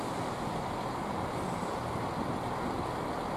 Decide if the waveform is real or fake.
real